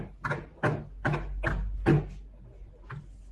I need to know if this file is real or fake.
real